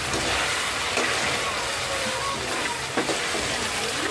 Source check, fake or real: real